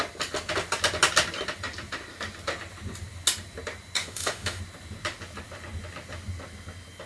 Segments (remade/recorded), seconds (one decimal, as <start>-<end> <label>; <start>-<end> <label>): 0.0-4.0 recorded; 4.0-4.6 remade; 4.6-7.1 recorded